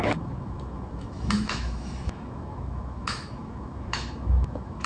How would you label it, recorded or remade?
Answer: remade